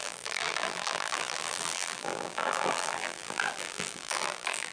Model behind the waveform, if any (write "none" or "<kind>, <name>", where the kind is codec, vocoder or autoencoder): vocoder, BigVGAN v2